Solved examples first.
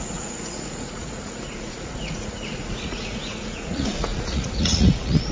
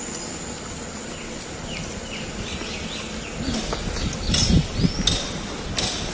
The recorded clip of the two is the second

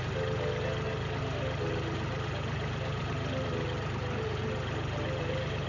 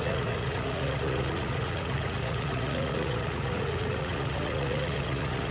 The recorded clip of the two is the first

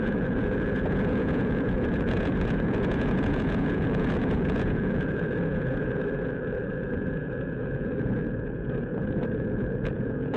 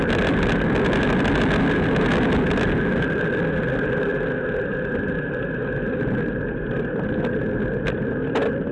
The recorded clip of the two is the second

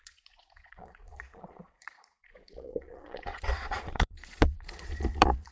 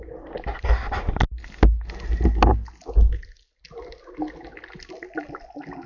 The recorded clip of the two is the second